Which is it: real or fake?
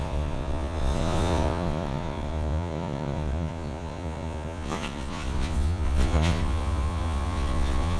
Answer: fake